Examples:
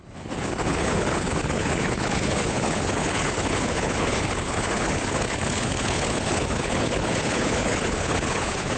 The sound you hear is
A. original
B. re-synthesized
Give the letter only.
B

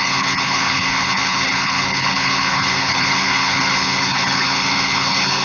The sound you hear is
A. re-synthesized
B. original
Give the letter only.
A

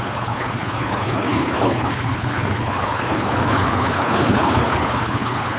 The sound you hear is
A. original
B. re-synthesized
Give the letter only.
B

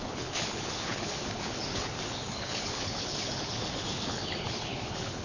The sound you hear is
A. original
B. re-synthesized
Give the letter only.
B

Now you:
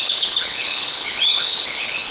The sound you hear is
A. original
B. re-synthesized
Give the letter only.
B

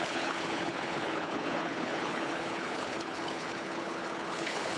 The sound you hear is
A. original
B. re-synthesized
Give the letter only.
B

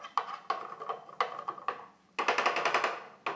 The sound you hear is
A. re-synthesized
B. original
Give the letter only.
B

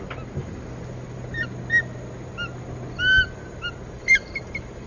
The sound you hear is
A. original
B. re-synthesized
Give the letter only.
A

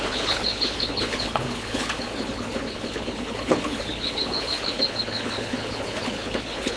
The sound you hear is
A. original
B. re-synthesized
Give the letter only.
B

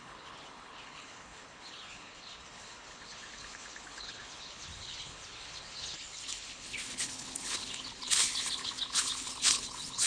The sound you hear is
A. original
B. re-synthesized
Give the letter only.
B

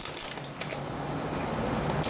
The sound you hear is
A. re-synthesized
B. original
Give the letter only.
B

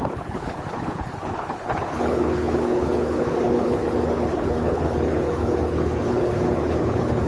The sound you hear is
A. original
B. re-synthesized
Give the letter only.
B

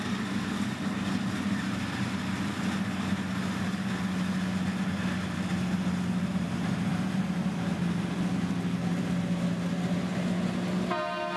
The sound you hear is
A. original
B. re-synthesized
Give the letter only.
A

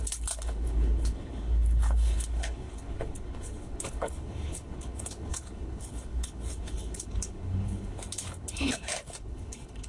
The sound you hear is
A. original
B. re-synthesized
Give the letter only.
B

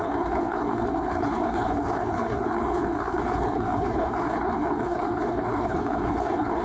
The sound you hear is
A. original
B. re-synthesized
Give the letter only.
B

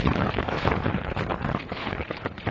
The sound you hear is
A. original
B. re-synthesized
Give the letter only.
B